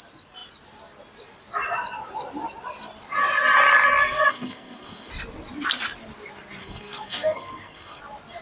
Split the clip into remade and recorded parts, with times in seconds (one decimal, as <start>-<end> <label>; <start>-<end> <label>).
0.0-4.0 recorded; 4.0-5.1 remade; 5.1-6.6 recorded; 6.6-8.0 remade; 8.0-8.4 recorded